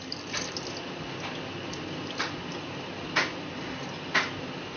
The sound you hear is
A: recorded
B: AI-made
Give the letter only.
A